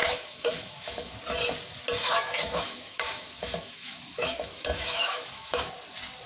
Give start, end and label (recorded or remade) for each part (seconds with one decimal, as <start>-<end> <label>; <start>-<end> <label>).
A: 0.0-1.2 remade; 1.2-2.0 recorded; 2.0-5.7 remade; 5.7-6.3 recorded